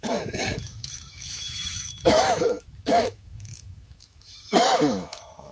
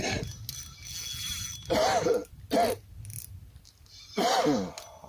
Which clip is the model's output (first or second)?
first